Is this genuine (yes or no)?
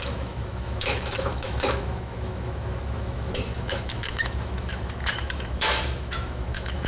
no